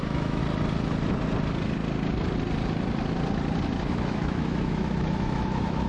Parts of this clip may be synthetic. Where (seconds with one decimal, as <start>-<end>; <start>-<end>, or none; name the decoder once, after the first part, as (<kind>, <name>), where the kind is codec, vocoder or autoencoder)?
0.0-0.4 (autoencoder, DAC-VAE); 3.9-5.9

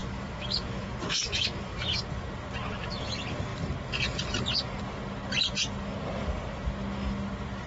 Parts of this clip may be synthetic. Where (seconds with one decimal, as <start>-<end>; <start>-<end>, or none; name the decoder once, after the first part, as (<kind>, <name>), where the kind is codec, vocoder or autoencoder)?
0.0-2.0 (autoencoder, DAC-VAE); 2.6-3.1

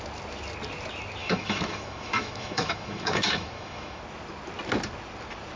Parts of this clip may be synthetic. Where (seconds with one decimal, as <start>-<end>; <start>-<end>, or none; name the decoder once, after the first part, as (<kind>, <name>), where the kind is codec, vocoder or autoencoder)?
1.2-4.0 (autoencoder, DAC-VAE)

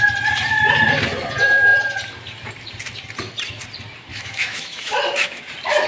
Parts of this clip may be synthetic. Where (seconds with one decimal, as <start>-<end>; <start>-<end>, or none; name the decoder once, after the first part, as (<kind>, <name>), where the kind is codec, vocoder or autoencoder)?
4.1-5.4 (autoencoder, DAC-VAE)